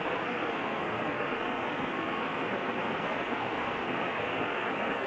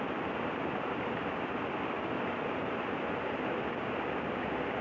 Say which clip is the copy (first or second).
first